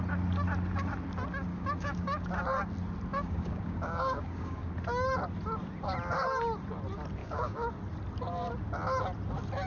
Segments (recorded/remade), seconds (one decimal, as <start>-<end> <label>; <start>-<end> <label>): 0.0-1.5 recorded; 1.5-2.3 remade; 2.3-3.1 recorded; 3.1-4.7 remade; 4.7-7.2 recorded; 7.2-7.7 remade; 7.7-9.7 recorded